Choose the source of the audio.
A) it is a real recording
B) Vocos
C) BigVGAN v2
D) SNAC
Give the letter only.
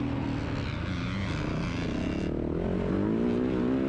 A